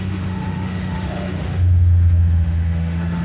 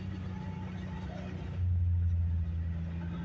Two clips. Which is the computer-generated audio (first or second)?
first